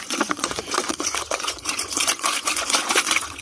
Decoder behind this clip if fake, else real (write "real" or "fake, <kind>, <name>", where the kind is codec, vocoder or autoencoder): fake, vocoder, Vocos